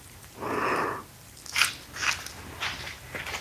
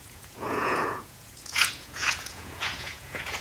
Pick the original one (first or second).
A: first